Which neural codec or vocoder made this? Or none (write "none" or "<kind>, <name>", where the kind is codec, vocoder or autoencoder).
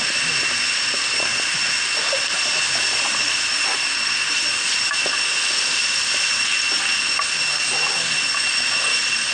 none